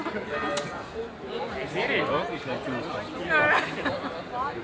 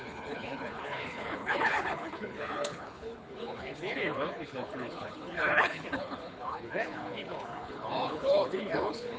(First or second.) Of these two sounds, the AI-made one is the second